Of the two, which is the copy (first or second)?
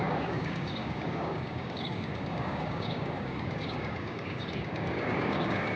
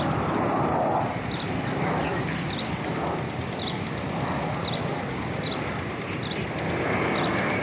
first